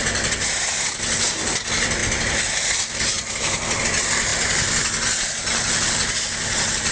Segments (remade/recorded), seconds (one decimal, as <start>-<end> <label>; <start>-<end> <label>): 0.0-6.9 recorded